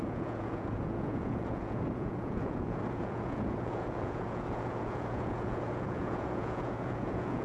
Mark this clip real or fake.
fake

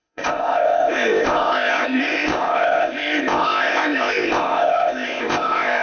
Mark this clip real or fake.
fake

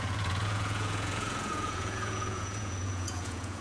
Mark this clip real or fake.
fake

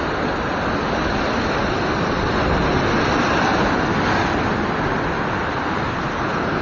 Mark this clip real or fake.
real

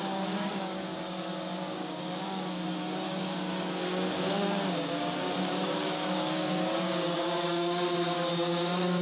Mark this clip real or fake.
fake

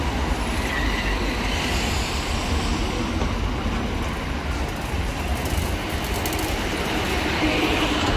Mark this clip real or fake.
real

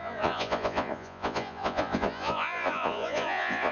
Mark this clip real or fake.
fake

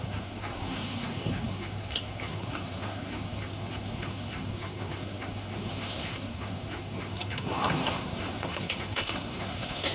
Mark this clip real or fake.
fake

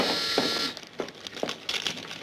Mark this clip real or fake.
real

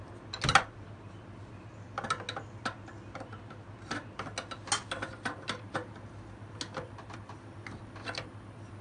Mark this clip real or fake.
real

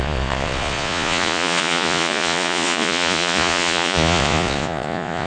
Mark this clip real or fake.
fake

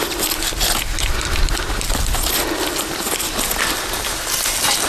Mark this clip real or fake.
real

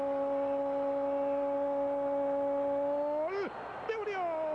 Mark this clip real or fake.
real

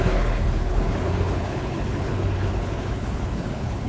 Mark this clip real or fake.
fake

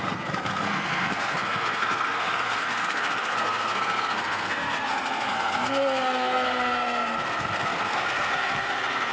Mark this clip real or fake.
fake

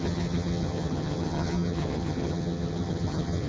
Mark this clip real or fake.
fake